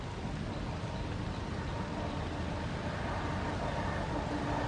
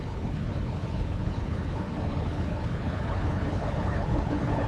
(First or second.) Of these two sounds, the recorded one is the first